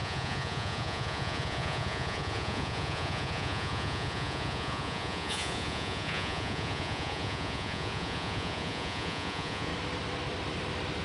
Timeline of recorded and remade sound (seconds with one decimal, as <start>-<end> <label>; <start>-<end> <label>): 0.0-9.7 remade; 9.7-11.0 recorded